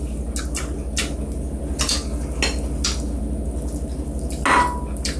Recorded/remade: recorded